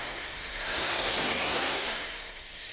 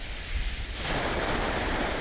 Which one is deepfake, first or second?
first